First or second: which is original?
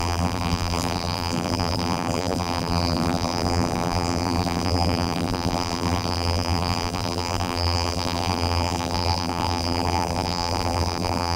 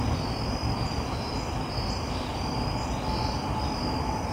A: second